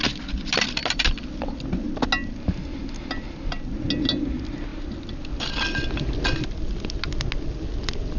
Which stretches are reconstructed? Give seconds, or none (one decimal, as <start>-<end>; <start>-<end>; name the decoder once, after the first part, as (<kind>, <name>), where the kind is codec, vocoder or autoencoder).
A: none